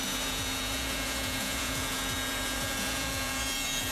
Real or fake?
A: fake